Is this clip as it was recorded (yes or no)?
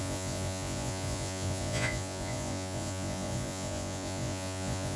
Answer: no